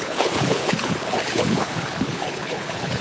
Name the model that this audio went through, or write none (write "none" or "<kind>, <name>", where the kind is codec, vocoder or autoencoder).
codec, HILCodec